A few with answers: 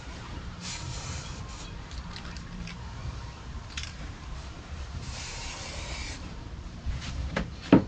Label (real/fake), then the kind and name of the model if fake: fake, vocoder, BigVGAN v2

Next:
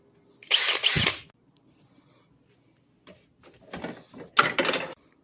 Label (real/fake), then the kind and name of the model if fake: real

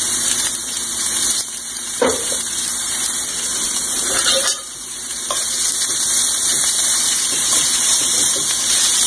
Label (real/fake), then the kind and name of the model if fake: fake, vocoder, BigVGAN v2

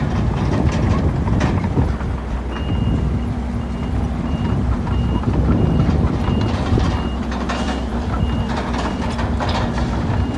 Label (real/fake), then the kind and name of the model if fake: fake, vocoder, BigVGAN v2